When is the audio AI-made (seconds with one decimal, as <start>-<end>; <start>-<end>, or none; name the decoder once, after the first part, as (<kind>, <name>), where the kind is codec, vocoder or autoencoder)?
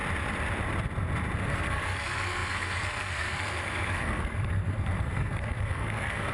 1.4-6.3 (codec, SNAC)